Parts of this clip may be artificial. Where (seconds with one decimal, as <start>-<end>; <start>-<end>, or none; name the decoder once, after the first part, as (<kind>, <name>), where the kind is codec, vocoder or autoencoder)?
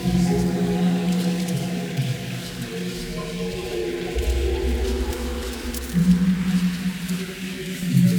0.0-3.8 (codec, DAC); 5.1-6.0; 7.1-8.2